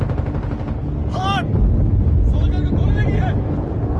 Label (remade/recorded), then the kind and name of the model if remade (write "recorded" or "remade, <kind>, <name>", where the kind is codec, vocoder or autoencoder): recorded